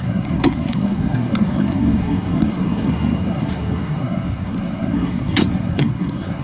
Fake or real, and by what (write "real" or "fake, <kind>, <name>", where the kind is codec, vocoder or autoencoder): fake, codec, SNAC